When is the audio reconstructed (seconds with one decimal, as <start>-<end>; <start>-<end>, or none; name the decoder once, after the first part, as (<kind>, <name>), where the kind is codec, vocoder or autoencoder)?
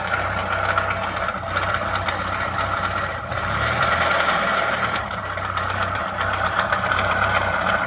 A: 0.0-0.4 (vocoder, BigVGAN v2); 2.8-7.9